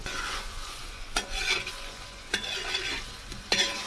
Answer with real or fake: fake